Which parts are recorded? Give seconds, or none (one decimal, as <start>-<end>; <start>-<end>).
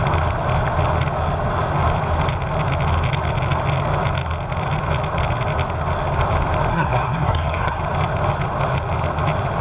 0.0-6.7; 7.8-9.6